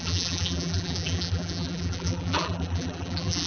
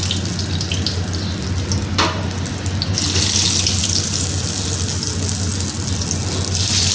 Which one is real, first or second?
second